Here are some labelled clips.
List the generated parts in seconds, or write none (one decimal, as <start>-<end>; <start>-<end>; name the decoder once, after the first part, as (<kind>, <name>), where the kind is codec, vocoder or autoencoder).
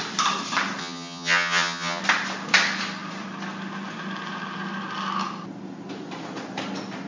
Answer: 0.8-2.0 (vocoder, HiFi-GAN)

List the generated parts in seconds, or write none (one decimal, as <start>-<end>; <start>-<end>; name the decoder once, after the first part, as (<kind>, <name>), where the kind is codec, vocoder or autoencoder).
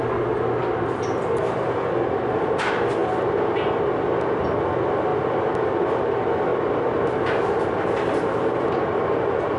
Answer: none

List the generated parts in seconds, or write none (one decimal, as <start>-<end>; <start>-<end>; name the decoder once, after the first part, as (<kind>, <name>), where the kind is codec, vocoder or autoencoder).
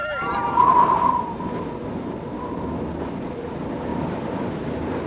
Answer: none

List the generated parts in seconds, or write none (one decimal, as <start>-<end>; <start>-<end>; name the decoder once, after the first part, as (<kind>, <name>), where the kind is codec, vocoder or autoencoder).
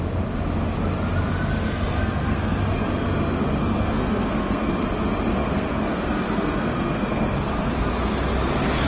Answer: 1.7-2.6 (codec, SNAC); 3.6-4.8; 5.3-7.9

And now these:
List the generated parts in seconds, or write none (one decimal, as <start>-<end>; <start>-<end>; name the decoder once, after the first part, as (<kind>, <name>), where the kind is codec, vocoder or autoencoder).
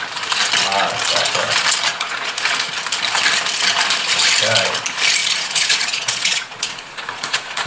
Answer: 1.9-2.7 (vocoder, Vocos); 5.2-7.7